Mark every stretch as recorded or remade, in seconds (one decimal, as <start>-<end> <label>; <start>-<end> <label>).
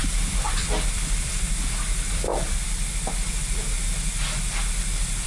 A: 0.0-1.5 remade; 1.5-2.3 recorded; 2.3-3.3 remade; 3.3-5.3 recorded